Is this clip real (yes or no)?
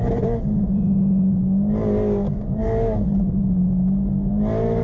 yes